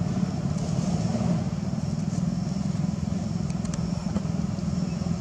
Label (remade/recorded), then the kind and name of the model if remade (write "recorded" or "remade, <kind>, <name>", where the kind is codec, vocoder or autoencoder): recorded